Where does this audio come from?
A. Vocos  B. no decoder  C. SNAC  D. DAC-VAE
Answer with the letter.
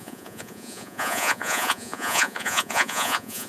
A